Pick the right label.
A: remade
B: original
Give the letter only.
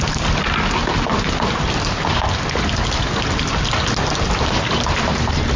B